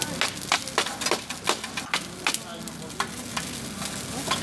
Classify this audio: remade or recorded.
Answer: recorded